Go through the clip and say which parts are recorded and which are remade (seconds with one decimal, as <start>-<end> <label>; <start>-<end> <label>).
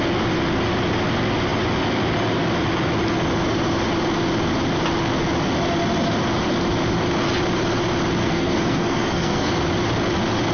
0.0-8.2 recorded; 8.2-9.5 remade; 9.5-10.5 recorded